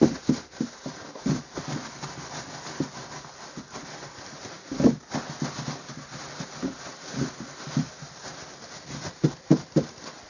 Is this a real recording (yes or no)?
yes